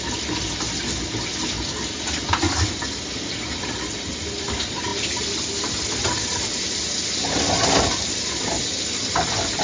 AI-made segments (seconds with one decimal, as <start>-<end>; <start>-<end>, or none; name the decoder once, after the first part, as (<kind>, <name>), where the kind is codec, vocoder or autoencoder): none